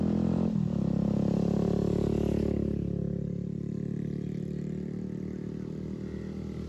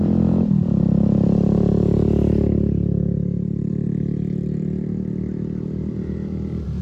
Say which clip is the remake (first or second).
second